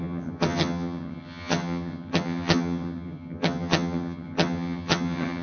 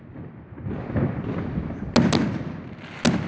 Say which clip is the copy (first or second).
first